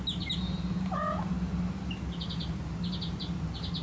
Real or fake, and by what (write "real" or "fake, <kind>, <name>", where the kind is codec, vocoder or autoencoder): real